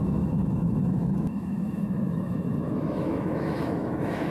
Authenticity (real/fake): fake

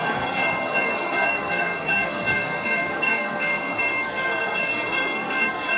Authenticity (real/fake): fake